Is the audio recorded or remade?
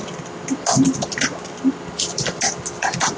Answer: recorded